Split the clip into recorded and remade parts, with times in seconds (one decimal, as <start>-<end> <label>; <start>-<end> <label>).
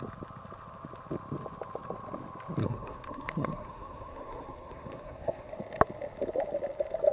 0.0-2.6 recorded; 2.6-5.5 remade; 5.5-7.1 recorded